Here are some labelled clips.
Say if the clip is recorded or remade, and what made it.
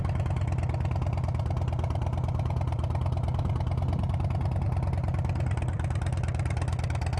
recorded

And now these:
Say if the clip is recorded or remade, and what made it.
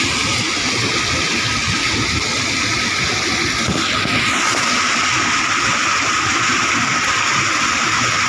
recorded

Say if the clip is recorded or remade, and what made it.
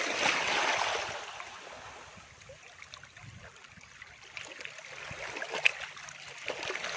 recorded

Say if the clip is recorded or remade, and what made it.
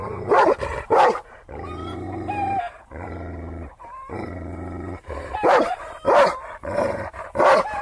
remade, vocoder, BigVGAN v2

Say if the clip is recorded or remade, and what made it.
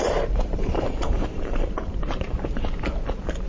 remade, vocoder, BigVGAN v2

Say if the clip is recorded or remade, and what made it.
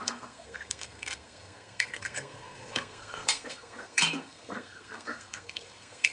remade, codec, SNAC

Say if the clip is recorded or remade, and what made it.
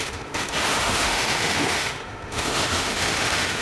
remade, autoencoder, DAC-VAE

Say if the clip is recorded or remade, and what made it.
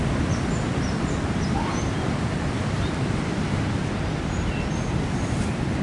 remade, vocoder, BigVGAN v2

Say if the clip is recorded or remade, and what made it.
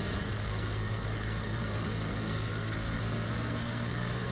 remade, codec, SNAC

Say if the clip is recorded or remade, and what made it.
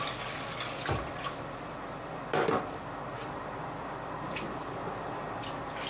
recorded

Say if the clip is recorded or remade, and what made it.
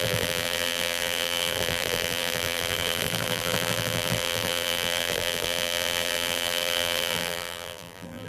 remade, vocoder, BigVGAN v2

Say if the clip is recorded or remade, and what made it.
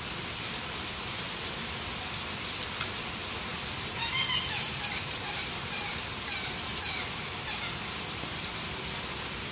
recorded